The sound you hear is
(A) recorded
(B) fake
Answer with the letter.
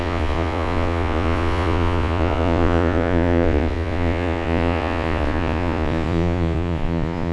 B